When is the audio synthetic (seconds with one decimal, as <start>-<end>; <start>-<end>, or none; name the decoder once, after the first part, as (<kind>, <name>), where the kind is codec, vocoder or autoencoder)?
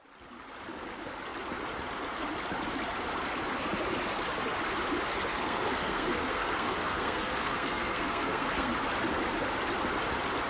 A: 5.3-8.7 (codec, SNAC)